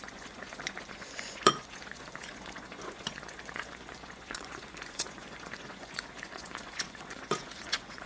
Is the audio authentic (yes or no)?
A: no